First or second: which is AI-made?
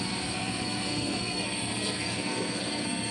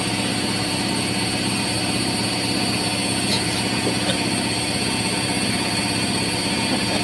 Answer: first